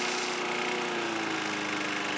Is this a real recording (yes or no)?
yes